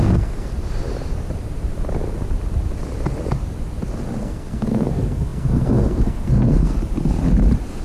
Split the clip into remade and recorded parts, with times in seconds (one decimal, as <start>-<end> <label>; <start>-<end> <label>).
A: 0.0-0.5 remade; 0.5-4.2 recorded; 4.2-6.8 remade; 6.8-7.8 recorded